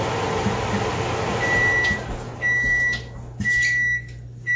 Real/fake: real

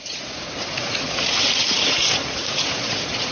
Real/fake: fake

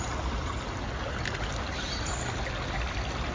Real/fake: real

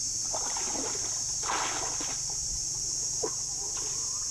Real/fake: fake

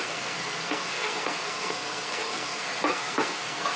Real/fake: fake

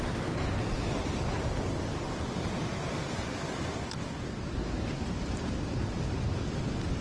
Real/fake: real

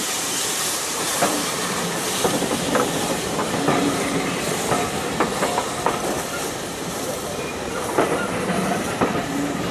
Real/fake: fake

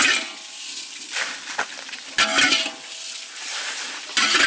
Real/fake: real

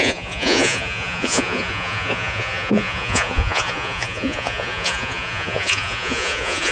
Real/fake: fake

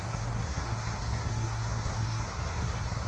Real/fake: fake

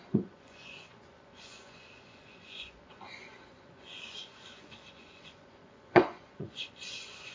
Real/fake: fake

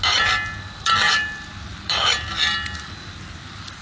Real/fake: real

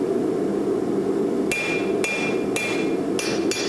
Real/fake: real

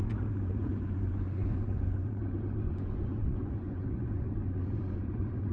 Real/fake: fake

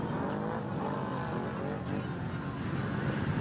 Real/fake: real